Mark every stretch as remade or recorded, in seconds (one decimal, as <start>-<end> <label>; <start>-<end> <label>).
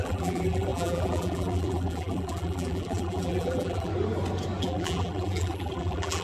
0.0-3.9 remade; 3.9-4.6 recorded; 4.6-6.2 remade